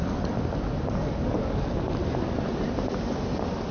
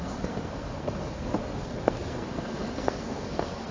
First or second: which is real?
first